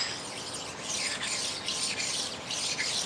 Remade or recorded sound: recorded